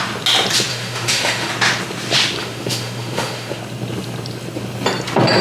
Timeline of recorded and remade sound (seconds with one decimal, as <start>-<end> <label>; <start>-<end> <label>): 0.0-0.7 recorded; 0.7-1.5 remade; 1.5-2.4 recorded; 2.4-3.6 remade; 3.6-5.4 recorded